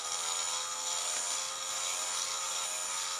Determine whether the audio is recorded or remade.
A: recorded